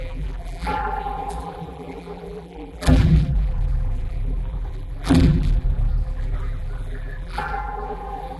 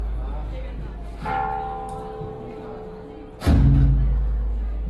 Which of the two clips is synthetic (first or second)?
first